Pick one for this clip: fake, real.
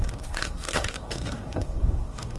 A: fake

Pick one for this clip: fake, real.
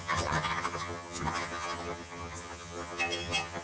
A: fake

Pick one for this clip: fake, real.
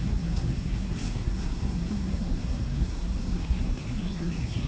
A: fake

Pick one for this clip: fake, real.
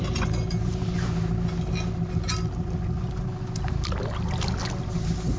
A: real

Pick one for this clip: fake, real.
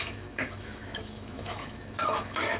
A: fake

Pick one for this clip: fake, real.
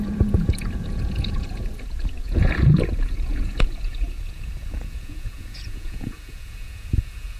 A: fake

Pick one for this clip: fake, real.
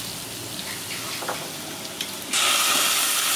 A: real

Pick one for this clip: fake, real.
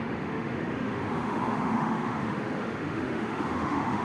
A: fake